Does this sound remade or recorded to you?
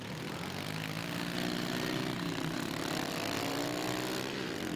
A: recorded